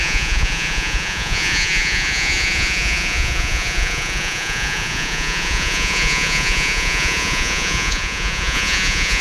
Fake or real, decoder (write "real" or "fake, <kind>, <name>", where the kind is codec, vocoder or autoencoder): fake, vocoder, Vocos